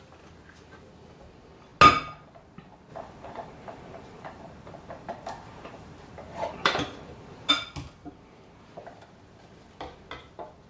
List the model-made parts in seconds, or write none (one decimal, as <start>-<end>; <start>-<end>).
2.9-7.5